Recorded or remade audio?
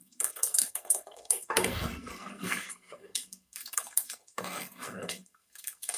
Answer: remade